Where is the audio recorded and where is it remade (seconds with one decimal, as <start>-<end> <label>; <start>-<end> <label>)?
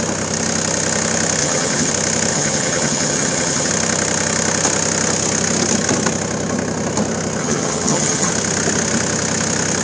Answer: 0.0-1.4 recorded; 1.4-1.9 remade; 1.9-2.3 recorded; 2.3-3.7 remade; 3.7-7.4 recorded; 7.4-8.3 remade; 8.3-9.8 recorded